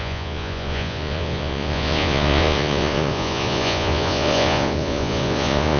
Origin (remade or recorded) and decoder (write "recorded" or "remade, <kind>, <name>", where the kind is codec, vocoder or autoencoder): remade, vocoder, Vocos